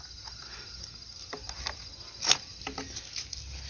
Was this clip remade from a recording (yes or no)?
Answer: no